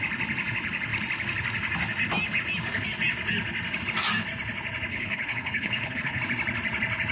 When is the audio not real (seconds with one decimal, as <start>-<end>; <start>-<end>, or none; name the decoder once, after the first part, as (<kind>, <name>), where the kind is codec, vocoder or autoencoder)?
4.9-6.2 (codec, HILCodec)

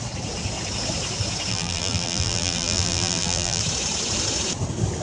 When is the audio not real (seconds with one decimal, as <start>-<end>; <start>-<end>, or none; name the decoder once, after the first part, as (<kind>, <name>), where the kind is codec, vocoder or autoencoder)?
1.5-3.6 (vocoder, BigVGAN v2)

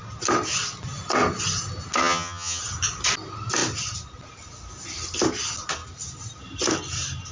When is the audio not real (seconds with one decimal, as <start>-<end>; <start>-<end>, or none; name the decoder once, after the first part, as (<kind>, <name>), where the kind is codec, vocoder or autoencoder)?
2.0-2.6 (vocoder, HiFi-GAN)

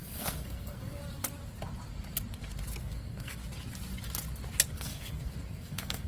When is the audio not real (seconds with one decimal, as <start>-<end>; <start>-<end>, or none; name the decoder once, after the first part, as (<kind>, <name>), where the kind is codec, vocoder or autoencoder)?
0.0-1.0 (codec, SNAC); 2.8-3.4; 4.7-6.1

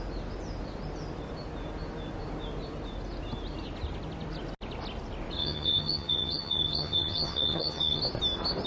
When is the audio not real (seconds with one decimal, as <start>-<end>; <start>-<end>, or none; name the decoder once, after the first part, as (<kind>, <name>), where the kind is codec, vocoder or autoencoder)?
5.4-8.0 (vocoder, HiFi-GAN)

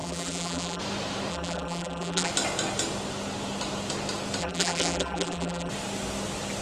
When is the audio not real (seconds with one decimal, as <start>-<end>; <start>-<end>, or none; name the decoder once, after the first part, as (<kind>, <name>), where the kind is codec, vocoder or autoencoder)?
0.0-0.8 (vocoder, BigVGAN v2); 1.3-2.3; 4.4-5.7